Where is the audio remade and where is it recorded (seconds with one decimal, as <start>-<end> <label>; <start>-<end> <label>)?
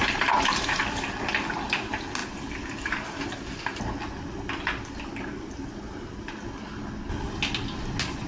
0.0-0.8 remade; 0.8-8.3 recorded